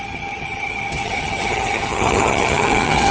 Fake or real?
fake